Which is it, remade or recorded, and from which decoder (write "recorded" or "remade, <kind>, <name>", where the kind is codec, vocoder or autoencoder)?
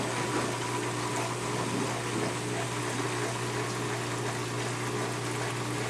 recorded